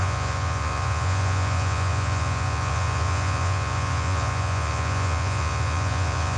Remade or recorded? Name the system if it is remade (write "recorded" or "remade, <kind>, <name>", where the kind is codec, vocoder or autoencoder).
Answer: remade, vocoder, Vocos